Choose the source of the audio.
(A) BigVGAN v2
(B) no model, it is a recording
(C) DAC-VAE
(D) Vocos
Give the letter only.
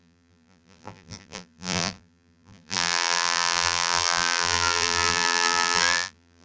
A